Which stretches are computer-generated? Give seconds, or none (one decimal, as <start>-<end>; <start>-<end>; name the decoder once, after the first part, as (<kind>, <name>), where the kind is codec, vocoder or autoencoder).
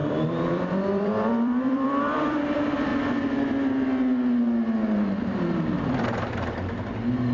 0.0-2.9 (vocoder, BigVGAN v2)